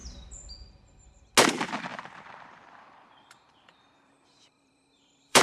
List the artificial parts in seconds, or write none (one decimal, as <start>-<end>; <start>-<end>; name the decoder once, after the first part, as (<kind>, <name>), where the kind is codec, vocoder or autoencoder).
1.9-5.4 (vocoder, BigVGAN v2)